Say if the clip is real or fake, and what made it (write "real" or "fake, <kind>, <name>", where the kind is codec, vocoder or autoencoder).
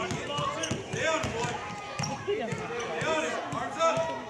real